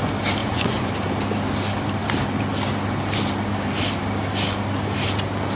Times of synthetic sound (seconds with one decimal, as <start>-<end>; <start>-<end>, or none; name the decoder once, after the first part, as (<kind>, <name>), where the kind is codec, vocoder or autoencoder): 0.4-0.9 (vocoder, Vocos)